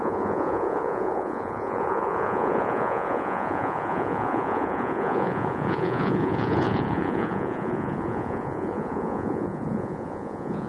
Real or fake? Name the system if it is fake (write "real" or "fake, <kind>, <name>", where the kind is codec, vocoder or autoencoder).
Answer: fake, vocoder, Vocos